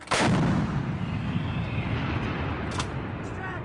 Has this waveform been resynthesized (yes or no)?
no